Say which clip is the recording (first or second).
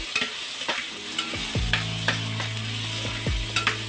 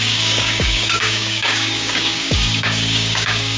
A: first